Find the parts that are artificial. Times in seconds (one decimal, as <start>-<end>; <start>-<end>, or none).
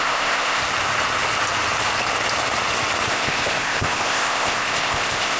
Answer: 0.0-0.6; 3.1-5.4